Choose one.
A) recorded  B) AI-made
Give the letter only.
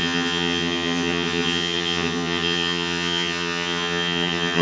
B